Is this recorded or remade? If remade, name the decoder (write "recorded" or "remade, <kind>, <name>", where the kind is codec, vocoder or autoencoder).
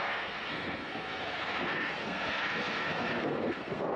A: remade, codec, SNAC